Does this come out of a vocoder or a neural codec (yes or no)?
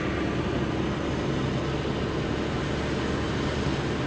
no